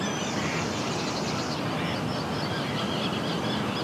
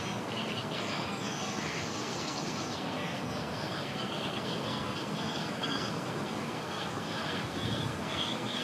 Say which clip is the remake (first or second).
second